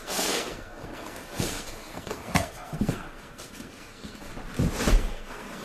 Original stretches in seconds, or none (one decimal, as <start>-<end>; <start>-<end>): 4.3-4.9